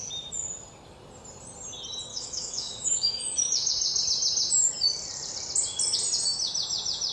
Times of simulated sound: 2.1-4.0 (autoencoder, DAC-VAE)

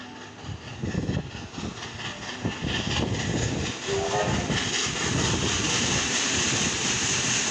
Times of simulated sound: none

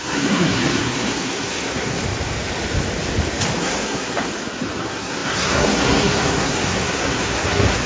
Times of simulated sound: 0.0-2.0 (codec, SNAC); 3.6-4.3; 4.8-7.9

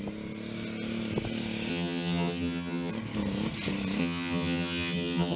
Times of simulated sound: 1.7-2.9 (vocoder, HiFi-GAN); 4.0-5.4

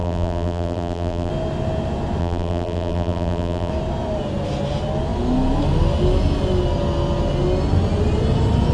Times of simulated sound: 0.0-1.3 (vocoder, BigVGAN v2); 2.2-3.7

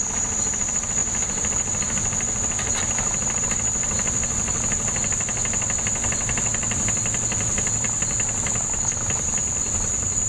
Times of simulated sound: none